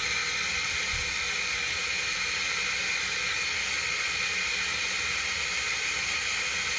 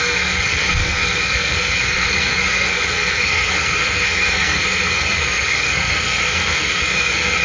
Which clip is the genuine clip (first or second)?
first